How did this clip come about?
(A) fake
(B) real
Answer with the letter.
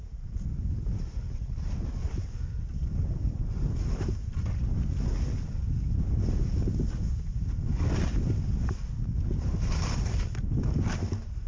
B